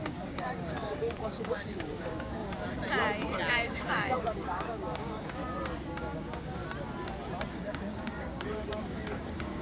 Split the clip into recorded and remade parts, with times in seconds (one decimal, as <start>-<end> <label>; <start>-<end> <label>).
0.0-2.4 remade; 2.4-3.5 recorded; 3.5-5.4 remade; 5.4-6.0 recorded; 6.0-6.6 remade; 6.6-7.5 recorded; 7.5-9.6 remade